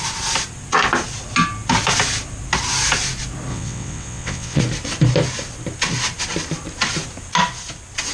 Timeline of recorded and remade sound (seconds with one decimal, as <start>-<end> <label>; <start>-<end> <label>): 0.0-3.5 recorded; 3.5-4.6 remade; 4.6-8.1 recorded